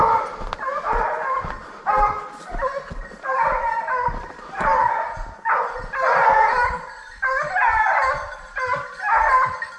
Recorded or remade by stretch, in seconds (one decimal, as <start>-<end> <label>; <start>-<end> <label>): 0.0-9.8 recorded